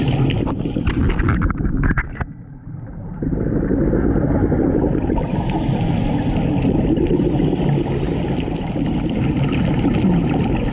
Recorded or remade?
recorded